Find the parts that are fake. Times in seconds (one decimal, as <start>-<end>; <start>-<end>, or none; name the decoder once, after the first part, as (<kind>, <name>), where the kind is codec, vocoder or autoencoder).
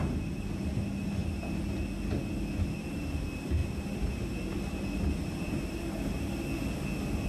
none